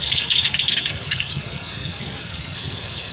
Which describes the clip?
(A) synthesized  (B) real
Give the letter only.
A